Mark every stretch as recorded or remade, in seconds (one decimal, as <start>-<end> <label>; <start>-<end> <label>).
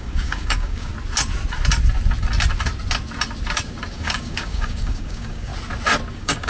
0.0-0.9 remade; 0.9-3.9 recorded; 3.9-5.5 remade; 5.5-6.1 recorded; 6.1-6.5 remade